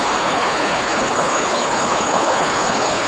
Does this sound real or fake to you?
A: fake